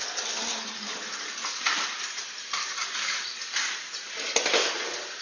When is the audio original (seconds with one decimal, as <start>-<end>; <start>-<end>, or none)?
0.0-0.9; 4.0-5.2